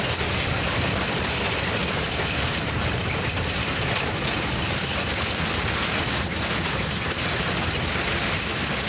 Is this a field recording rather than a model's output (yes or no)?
yes